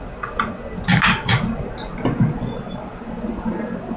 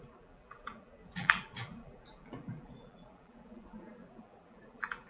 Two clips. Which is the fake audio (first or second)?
second